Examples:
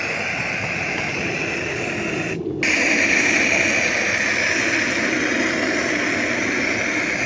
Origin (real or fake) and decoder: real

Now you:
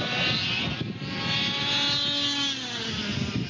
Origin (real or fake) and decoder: real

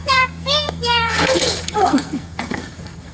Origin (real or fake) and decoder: fake, codec, SNAC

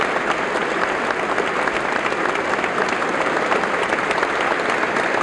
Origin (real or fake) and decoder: real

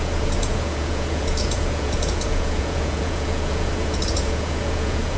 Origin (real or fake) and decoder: fake, vocoder, Vocos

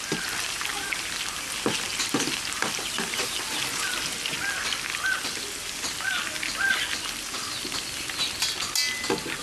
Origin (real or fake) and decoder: real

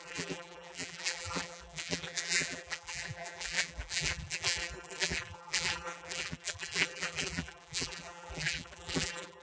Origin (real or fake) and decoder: fake, vocoder, BigVGAN v2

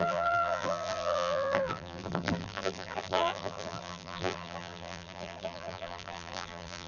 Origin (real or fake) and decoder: fake, vocoder, BigVGAN v2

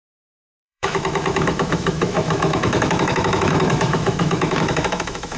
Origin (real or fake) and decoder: fake, autoencoder, DAC-VAE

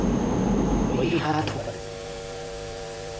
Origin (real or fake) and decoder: fake, vocoder, BigVGAN v2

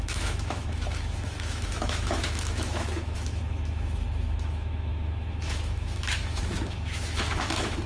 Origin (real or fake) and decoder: fake, autoencoder, DAC-VAE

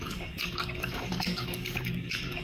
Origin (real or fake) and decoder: fake, codec, DAC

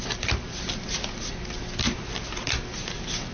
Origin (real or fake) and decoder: real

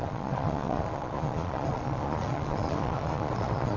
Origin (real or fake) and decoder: fake, vocoder, Vocos